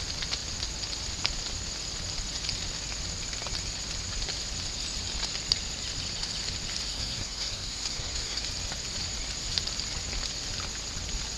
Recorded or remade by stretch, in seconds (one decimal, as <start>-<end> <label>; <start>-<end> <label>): 0.0-6.9 recorded; 6.9-8.4 remade; 8.4-11.4 recorded